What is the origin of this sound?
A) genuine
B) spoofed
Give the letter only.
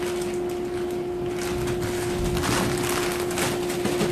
A